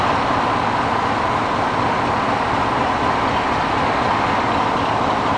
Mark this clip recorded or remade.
recorded